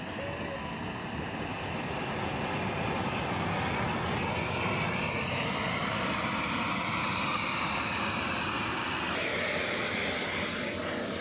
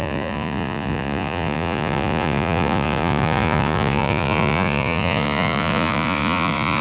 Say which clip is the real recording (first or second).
first